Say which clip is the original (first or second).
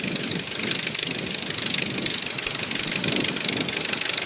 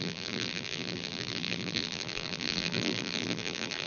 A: first